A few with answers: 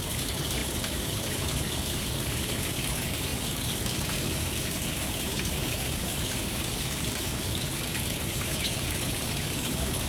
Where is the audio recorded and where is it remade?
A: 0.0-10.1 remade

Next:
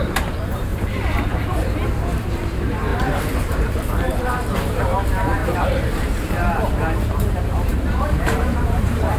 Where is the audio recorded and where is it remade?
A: 0.0-0.7 remade; 0.7-1.2 recorded; 1.2-9.2 remade

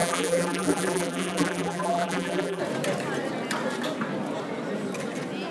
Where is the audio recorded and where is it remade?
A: 0.0-2.6 remade; 2.6-5.5 recorded

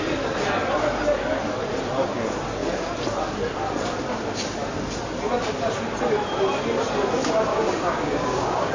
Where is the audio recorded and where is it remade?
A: 0.0-7.5 recorded; 7.5-8.7 remade

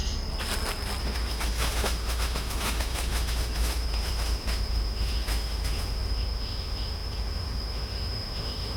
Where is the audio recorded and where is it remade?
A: 0.0-1.0 recorded; 1.0-8.8 remade

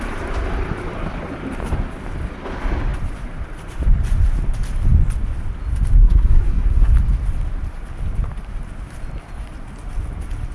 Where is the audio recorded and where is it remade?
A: 0.0-6.0 recorded; 6.0-6.9 remade; 6.9-10.5 recorded

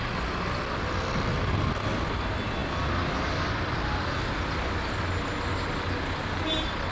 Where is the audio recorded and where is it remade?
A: 0.0-6.2 recorded; 6.2-6.9 remade

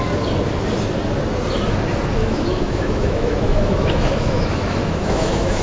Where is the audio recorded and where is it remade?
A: 0.0-2.2 recorded; 2.2-5.6 remade